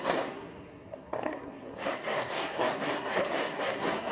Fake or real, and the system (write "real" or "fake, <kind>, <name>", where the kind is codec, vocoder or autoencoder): fake, codec, SNAC